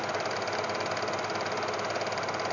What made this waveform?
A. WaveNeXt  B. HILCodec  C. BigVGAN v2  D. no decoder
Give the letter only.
D